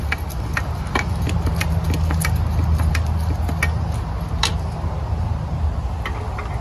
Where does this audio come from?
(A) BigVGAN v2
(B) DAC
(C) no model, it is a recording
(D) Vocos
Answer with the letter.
C